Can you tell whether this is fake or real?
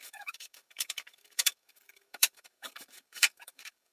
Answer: fake